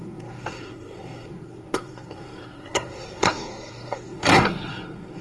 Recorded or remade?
remade